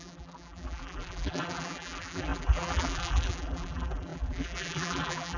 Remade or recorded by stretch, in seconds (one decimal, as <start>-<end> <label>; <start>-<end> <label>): 0.0-5.4 remade